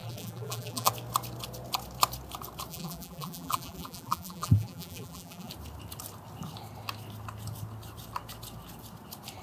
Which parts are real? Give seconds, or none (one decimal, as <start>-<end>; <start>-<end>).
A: 0.9-2.7; 5.5-9.4